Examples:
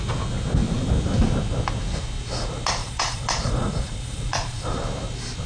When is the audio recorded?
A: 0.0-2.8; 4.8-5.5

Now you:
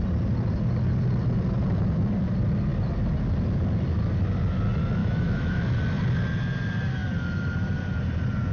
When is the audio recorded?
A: 0.0-5.0; 5.6-8.5

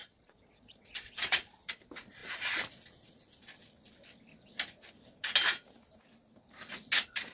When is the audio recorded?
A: 1.7-7.3

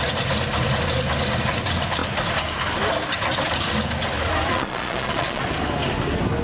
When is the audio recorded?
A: 0.0-4.5; 5.4-6.4

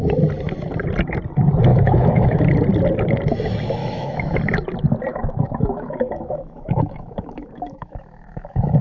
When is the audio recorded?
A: 0.0-1.7; 2.4-3.8; 4.4-5.1